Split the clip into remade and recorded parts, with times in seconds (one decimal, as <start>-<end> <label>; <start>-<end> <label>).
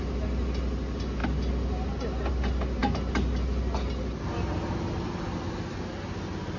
0.0-6.6 recorded